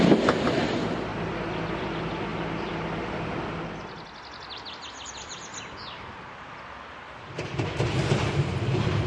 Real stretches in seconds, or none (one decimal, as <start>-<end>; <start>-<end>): 0.0-9.1